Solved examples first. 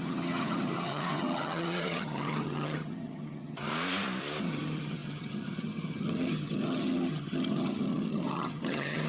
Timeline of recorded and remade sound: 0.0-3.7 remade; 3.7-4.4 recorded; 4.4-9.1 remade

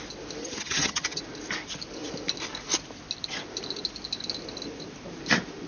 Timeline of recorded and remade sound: 0.0-0.4 recorded; 0.4-1.2 remade; 1.2-5.7 recorded

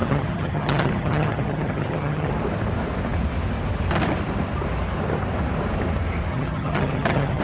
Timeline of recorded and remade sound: 0.0-2.3 remade; 2.3-6.3 recorded; 6.3-7.4 remade

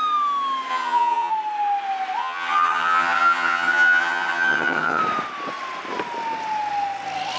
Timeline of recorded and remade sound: 0.0-0.7 recorded; 0.7-1.3 remade; 1.3-2.2 recorded; 2.2-5.0 remade; 5.0-7.4 recorded

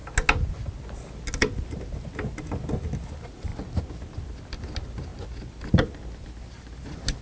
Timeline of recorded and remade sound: 0.0-7.2 recorded

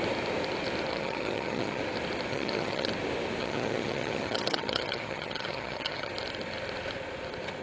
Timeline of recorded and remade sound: 0.0-0.9 recorded; 0.9-1.8 remade; 1.8-2.3 recorded; 2.3-2.9 remade; 2.9-3.4 recorded; 3.4-6.1 remade; 6.1-7.6 recorded